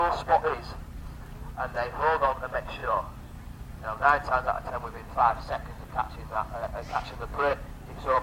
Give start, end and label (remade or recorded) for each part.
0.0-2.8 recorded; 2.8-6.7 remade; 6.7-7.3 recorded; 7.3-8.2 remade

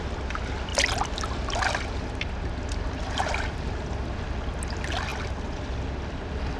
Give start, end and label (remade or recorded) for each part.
0.0-6.6 recorded

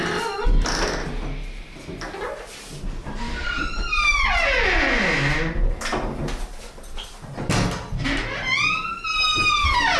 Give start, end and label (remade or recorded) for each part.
0.0-3.0 recorded; 3.0-4.2 remade; 4.2-9.3 recorded; 9.3-10.0 remade